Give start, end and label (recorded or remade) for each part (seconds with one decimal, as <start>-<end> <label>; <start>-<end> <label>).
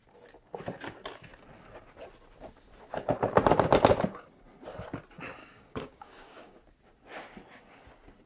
0.0-5.4 recorded; 5.4-6.6 remade; 6.6-8.3 recorded